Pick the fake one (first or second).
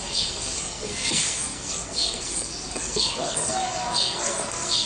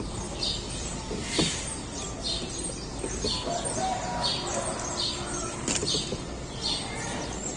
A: first